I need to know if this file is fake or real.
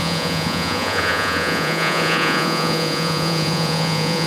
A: fake